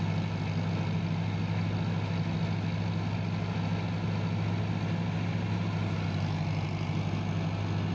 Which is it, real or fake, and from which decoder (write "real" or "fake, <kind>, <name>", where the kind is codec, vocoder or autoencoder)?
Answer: real